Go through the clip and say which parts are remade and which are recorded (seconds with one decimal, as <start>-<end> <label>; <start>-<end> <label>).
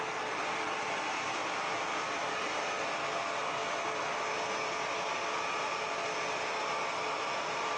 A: 0.0-3.6 remade; 3.6-7.1 recorded; 7.1-7.8 remade